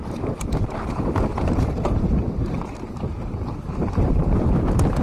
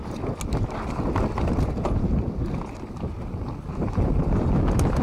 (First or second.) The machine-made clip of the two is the first